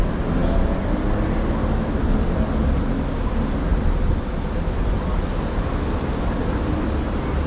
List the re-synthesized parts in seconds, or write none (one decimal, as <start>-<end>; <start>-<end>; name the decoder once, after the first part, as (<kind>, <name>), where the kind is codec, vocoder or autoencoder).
none

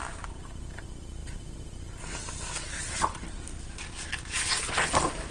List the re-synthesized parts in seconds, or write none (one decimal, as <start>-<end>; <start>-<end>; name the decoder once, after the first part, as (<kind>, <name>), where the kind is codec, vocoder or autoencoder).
1.2-4.4 (vocoder, BigVGAN v2)